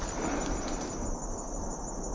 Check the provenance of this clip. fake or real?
real